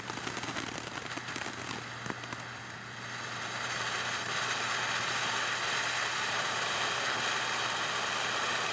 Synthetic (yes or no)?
no